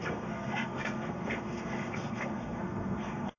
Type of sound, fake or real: fake